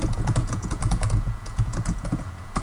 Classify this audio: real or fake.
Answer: fake